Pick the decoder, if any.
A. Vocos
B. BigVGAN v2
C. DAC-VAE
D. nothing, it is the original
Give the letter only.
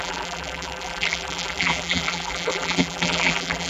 B